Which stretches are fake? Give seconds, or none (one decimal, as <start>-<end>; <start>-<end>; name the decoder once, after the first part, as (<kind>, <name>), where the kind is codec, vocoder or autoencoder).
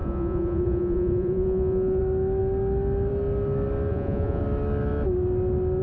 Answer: 0.0-2.0 (vocoder, Vocos); 3.9-4.4